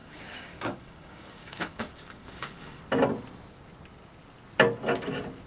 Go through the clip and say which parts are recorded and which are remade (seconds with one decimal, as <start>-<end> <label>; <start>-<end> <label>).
0.0-2.8 remade; 2.8-5.5 recorded